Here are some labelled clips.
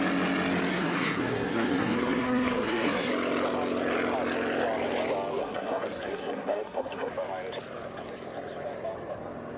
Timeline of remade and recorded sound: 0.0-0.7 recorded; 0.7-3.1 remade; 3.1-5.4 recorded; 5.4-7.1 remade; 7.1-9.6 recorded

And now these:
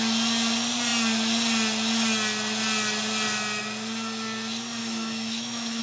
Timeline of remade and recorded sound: 0.0-4.8 recorded; 4.8-5.8 remade

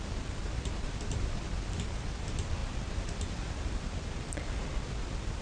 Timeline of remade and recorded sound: 0.0-5.4 remade

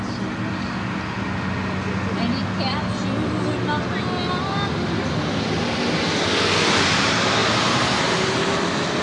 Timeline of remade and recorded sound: 0.0-9.0 recorded

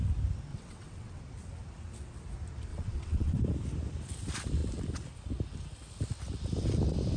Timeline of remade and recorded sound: 0.0-0.5 recorded; 0.5-1.2 remade; 1.2-2.7 recorded; 2.7-3.4 remade; 3.4-7.2 recorded

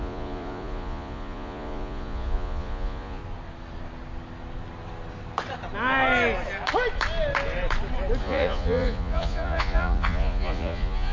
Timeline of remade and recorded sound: 0.0-3.2 remade; 3.2-8.2 recorded; 8.2-11.1 remade